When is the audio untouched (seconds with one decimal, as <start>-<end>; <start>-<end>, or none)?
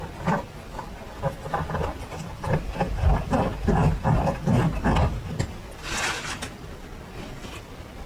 0.0-8.1